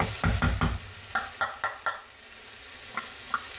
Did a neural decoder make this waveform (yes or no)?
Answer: no